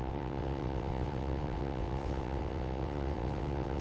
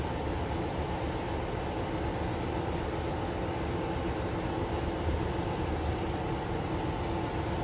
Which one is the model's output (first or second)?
first